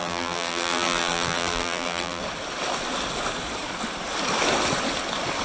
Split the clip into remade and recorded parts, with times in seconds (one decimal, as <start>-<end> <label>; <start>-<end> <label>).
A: 0.0-2.2 remade; 2.2-5.4 recorded